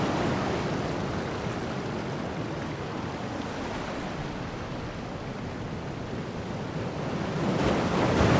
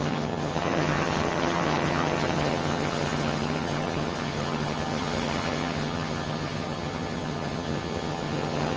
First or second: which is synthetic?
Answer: second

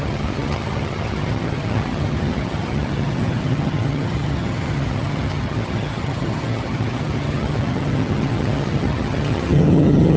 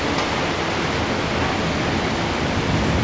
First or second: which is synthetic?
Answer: first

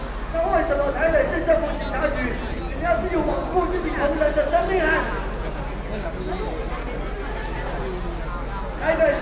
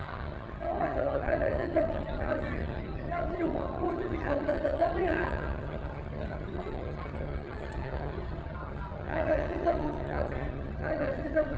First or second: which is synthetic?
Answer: second